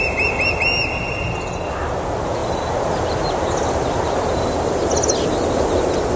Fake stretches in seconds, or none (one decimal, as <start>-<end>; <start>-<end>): none